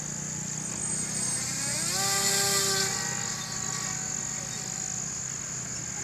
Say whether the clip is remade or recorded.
recorded